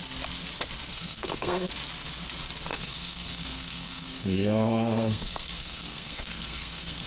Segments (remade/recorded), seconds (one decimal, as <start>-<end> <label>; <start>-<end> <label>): 0.0-0.9 recorded; 0.9-1.7 remade; 1.7-2.7 recorded; 2.7-7.1 remade